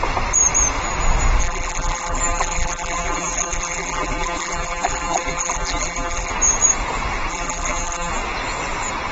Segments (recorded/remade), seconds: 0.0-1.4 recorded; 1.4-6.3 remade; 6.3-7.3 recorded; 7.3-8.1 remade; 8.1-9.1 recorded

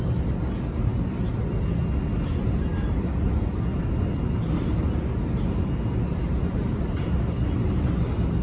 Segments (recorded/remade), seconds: 0.0-6.4 recorded; 6.4-7.2 remade; 7.2-8.4 recorded

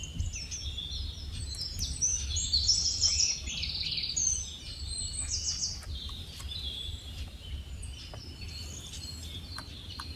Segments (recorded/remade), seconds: 0.0-2.1 recorded; 2.1-3.3 remade; 3.3-10.2 recorded

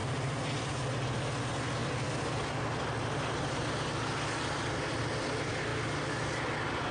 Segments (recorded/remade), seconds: 0.0-0.6 remade; 0.6-1.8 recorded; 1.8-2.3 remade; 2.3-6.9 recorded